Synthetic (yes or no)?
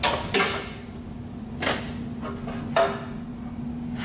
no